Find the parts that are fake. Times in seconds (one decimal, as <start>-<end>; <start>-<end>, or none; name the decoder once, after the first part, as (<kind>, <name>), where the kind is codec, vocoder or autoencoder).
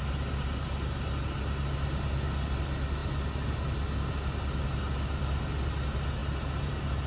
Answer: none